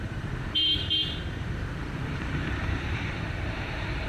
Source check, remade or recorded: remade